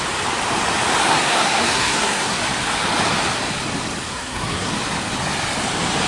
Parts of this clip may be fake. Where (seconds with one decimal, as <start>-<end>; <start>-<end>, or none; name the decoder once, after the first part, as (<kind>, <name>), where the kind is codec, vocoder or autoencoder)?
1.1-2.4 (codec, SNAC); 4.1-4.7